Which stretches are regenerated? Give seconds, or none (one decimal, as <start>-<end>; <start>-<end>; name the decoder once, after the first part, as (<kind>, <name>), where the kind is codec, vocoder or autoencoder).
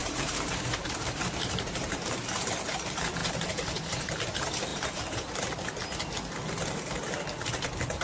0.0-2.2 (vocoder, BigVGAN v2); 3.2-4.1; 4.7-5.4